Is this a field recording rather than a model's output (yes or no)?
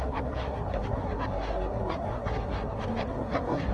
no